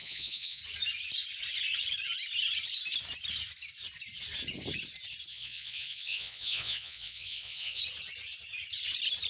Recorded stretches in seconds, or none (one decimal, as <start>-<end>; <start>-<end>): 0.6-5.3; 7.8-9.3